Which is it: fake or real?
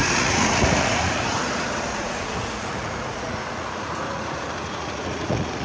fake